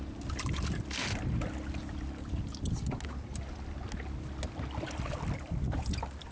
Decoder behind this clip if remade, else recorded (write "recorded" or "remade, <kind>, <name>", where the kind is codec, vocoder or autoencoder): recorded